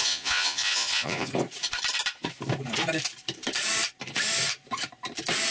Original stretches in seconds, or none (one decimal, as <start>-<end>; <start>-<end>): 1.3-5.5